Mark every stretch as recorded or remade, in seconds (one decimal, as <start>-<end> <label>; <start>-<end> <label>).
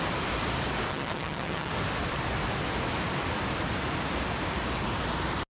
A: 0.0-0.9 recorded; 0.9-1.7 remade; 1.7-5.5 recorded